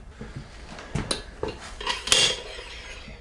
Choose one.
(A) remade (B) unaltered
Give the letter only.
B